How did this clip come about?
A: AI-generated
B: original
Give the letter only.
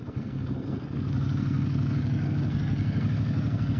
A